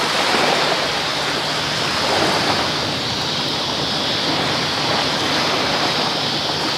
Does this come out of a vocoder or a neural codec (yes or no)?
no